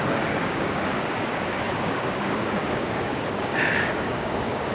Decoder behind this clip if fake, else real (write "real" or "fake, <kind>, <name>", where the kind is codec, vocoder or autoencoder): fake, codec, DAC